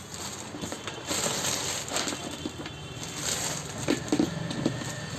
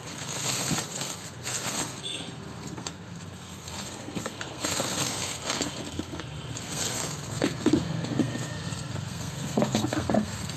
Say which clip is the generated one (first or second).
second